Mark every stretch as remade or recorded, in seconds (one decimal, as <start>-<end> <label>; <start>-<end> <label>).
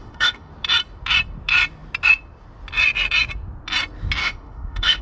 0.0-0.5 remade; 0.5-4.2 recorded; 4.2-5.0 remade